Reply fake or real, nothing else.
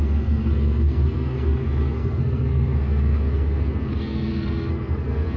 fake